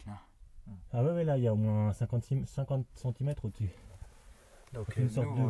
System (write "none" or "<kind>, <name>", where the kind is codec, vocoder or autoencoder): none